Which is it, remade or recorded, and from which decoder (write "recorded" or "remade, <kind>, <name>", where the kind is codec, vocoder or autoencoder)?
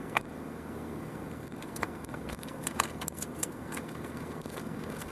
remade, codec, SNAC